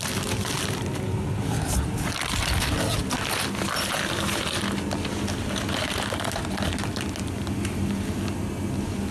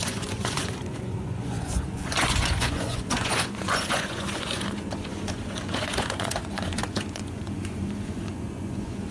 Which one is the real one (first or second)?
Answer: first